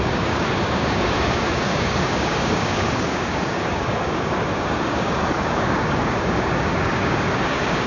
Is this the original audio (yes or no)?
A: no